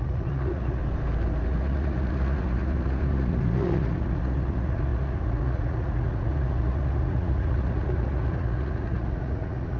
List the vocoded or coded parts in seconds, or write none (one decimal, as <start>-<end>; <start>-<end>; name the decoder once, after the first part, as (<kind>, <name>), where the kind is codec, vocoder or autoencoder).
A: 0.0-0.8 (vocoder, Vocos); 1.5-9.8

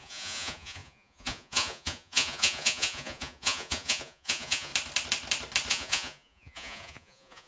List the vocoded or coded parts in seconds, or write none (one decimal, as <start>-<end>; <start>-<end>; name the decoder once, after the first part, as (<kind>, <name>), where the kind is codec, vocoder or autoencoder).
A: 0.0-4.7 (vocoder, Vocos); 5.7-7.5

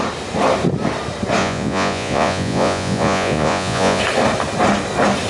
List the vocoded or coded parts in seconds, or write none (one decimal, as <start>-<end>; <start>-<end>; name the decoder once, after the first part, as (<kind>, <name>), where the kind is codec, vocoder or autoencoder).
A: 1.4-4.0 (vocoder, Vocos)

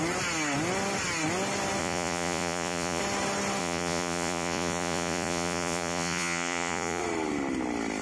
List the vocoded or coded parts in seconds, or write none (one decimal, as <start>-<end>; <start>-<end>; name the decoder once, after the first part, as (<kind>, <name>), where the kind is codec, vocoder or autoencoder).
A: 1.8-3.0 (vocoder, Vocos); 3.6-7.0

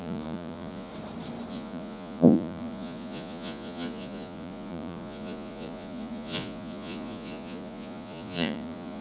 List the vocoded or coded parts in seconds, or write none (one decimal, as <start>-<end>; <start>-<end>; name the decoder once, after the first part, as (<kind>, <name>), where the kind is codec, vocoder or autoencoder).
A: 0.0-0.9 (vocoder, Vocos); 1.5-9.0